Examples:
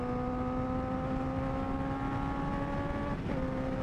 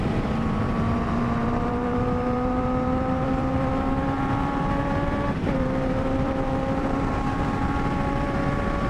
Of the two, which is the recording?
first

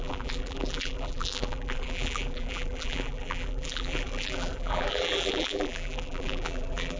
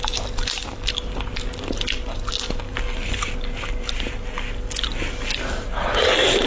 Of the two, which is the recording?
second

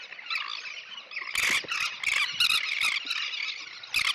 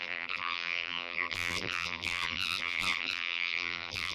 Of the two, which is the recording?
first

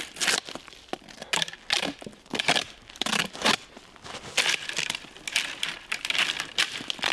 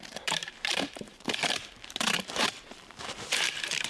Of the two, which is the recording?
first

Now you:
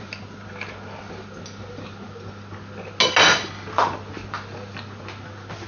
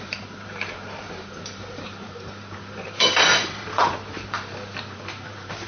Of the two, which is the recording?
first